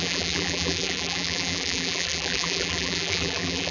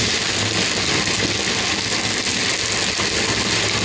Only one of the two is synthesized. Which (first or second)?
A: first